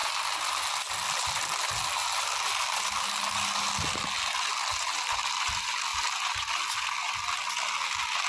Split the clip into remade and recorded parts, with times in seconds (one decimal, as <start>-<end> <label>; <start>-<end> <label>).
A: 0.0-8.3 recorded